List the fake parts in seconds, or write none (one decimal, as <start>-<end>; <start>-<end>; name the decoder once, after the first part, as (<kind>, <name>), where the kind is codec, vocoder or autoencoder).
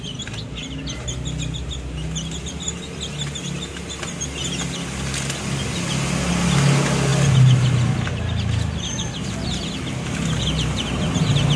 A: none